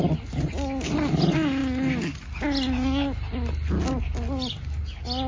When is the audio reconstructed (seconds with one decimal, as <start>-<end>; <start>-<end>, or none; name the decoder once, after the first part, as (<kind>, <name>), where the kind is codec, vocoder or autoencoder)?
none